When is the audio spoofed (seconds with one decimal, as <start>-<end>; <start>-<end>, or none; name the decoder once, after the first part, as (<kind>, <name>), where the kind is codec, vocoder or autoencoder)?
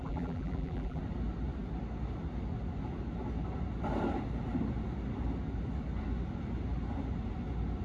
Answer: 0.0-1.0 (vocoder, BigVGAN v2)